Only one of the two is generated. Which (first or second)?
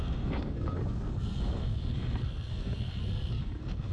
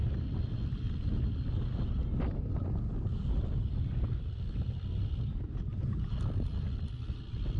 first